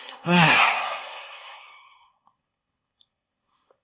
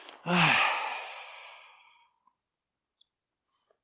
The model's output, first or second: first